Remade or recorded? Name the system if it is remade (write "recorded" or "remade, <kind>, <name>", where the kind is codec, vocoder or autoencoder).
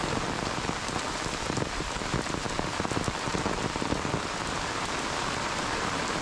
remade, vocoder, BigVGAN v2